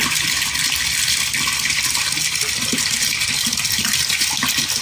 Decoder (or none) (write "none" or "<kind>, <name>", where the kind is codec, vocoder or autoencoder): none